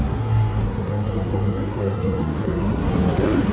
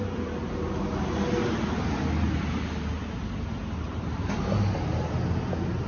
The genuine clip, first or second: second